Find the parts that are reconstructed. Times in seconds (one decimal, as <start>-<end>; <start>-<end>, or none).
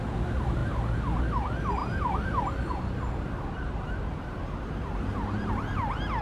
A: none